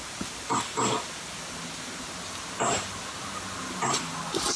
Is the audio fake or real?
real